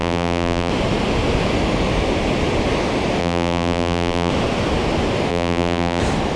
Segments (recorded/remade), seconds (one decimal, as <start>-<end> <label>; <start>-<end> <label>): 0.0-0.7 remade; 0.7-3.2 recorded; 3.2-4.3 remade; 4.3-5.3 recorded; 5.3-6.0 remade; 6.0-6.4 recorded